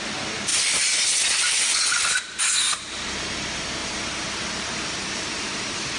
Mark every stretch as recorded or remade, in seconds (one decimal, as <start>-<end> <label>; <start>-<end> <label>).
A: 0.0-3.8 recorded; 3.8-6.0 remade